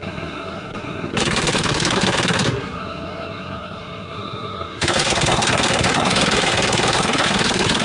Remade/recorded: remade